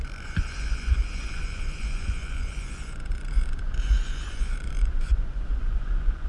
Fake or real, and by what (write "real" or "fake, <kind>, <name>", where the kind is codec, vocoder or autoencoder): fake, vocoder, Vocos